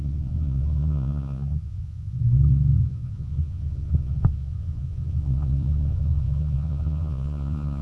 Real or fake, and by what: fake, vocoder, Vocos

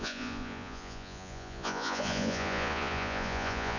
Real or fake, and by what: fake, vocoder, Vocos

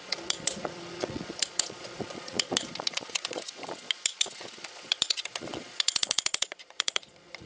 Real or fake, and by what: fake, vocoder, Vocos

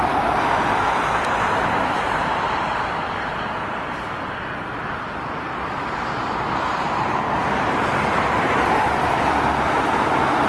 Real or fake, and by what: real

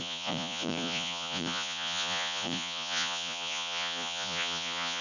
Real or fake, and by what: fake, vocoder, Vocos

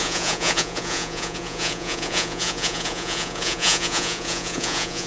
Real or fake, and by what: fake, vocoder, Vocos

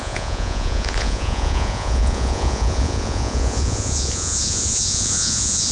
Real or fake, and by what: fake, vocoder, Vocos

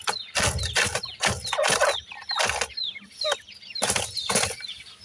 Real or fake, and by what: real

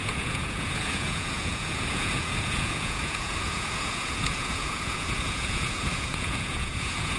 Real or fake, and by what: fake, vocoder, Vocos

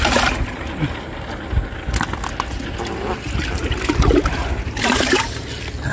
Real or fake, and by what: real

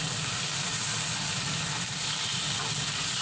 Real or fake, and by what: real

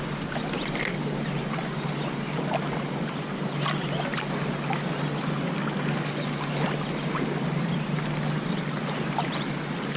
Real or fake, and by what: real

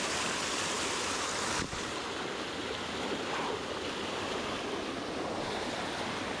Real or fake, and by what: real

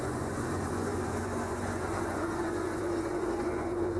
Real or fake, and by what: fake, vocoder, Vocos